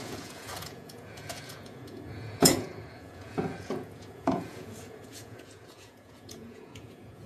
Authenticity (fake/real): fake